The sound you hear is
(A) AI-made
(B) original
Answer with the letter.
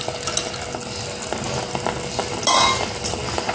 B